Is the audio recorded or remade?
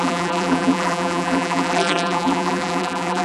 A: remade